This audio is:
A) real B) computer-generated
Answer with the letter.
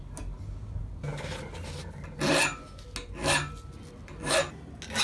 A